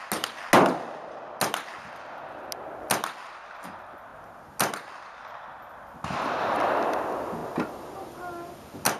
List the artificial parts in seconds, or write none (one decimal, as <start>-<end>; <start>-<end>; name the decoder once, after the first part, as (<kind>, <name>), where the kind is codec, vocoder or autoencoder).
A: none